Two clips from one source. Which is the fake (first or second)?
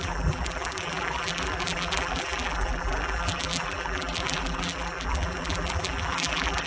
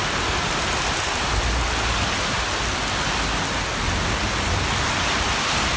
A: first